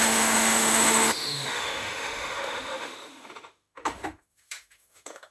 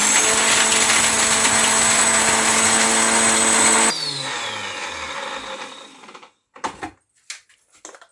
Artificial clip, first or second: first